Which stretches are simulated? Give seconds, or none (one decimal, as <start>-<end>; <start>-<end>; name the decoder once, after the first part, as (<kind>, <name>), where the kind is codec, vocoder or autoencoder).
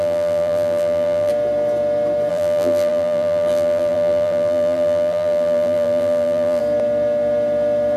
0.0-1.3 (vocoder, BigVGAN v2); 2.3-6.6